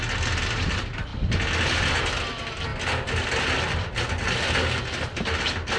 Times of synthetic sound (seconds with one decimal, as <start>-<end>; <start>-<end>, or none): none